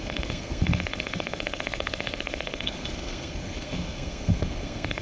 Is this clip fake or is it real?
fake